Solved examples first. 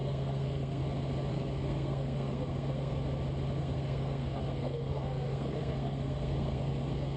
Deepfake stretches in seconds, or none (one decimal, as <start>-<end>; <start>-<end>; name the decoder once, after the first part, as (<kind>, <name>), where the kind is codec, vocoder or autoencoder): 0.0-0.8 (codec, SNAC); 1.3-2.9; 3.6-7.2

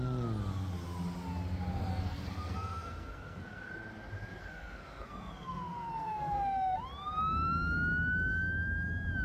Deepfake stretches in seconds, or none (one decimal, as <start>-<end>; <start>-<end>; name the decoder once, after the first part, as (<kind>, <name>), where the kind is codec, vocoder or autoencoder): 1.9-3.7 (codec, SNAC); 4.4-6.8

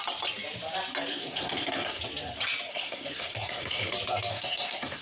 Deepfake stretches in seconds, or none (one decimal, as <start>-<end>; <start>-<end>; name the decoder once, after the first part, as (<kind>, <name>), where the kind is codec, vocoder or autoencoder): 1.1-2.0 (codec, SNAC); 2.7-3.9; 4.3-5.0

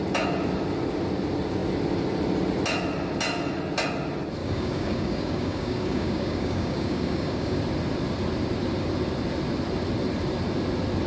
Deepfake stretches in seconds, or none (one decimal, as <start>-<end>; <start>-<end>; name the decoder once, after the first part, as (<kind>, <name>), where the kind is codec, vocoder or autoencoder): 4.4-7.6 (codec, DAC)

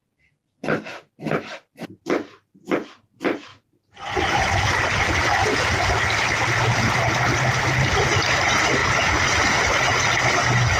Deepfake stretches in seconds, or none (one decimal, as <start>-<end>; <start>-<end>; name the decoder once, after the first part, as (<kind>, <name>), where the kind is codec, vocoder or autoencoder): none

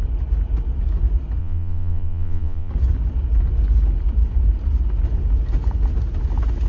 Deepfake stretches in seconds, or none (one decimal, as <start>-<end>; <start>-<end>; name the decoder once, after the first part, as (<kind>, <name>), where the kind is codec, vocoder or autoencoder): 1.4-2.7 (vocoder, Vocos)